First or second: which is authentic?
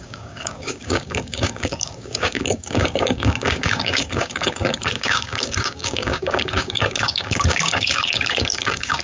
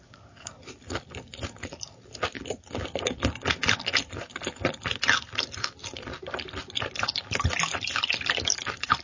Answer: second